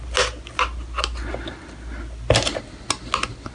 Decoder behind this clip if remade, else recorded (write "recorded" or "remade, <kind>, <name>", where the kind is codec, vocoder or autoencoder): recorded